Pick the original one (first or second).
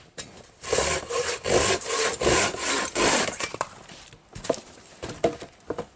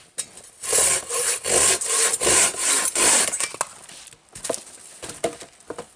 second